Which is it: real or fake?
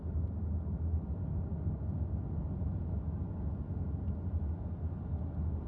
real